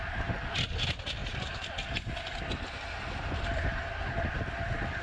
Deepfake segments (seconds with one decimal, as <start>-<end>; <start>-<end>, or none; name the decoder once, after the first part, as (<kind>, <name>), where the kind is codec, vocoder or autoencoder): none